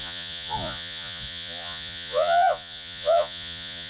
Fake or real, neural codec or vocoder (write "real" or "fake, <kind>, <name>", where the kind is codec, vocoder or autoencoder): fake, vocoder, Vocos